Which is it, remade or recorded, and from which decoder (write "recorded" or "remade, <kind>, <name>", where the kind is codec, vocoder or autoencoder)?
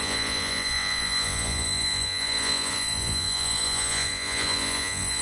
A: remade, vocoder, Vocos